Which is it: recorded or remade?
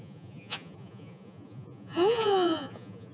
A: remade